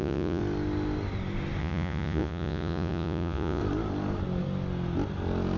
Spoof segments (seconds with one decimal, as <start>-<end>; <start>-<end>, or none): 0.0-0.4; 1.6-3.6